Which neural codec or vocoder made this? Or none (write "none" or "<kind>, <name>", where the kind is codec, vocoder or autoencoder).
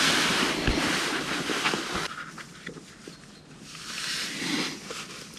none